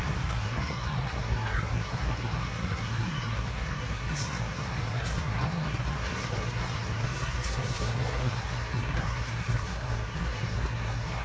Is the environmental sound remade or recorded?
remade